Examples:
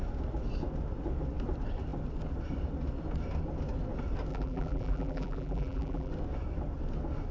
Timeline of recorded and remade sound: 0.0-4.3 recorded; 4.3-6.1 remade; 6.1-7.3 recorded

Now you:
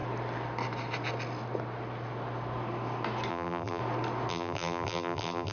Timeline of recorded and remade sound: 0.0-3.3 recorded; 3.3-3.8 remade; 3.8-4.3 recorded; 4.3-5.5 remade

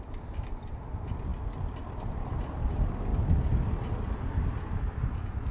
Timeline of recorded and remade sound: 0.0-1.3 remade; 1.3-2.1 recorded; 2.1-3.1 remade; 3.1-4.0 recorded; 4.0-5.5 remade

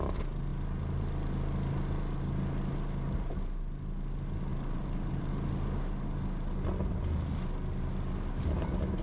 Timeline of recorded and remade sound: 0.0-4.5 recorded; 4.5-5.3 remade; 5.3-9.0 recorded